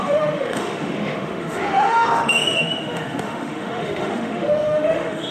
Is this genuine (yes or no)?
no